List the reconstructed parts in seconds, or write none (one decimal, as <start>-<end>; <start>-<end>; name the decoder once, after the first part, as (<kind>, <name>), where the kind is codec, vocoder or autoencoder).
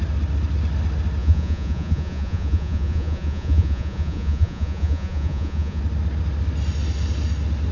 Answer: 1.2-5.8 (vocoder, Vocos)